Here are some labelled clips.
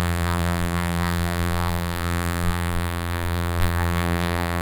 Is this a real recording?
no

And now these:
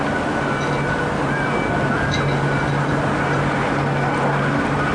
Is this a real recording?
yes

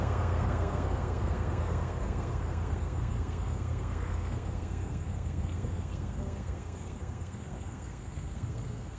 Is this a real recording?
no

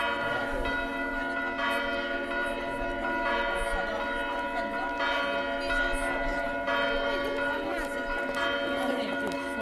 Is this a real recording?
yes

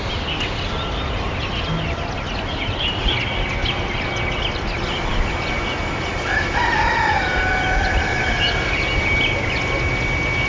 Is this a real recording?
yes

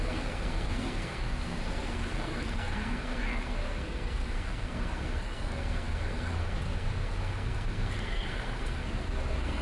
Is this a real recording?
no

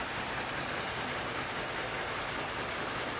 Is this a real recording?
yes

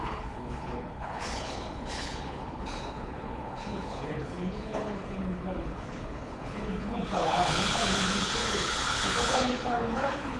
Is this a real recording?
no